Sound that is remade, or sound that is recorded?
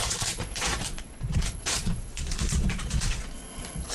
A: remade